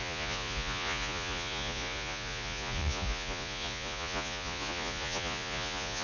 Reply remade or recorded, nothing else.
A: remade